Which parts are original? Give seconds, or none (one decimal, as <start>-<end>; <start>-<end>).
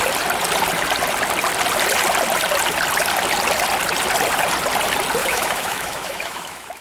0.0-5.2